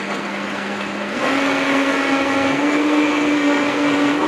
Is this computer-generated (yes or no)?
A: yes